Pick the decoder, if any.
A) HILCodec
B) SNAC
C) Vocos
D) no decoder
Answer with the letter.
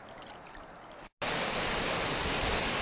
D